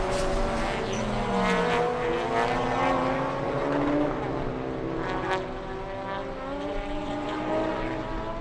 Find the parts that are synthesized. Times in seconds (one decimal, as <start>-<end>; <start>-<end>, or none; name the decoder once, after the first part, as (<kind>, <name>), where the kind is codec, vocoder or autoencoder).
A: 7.0-7.7 (vocoder, BigVGAN v2)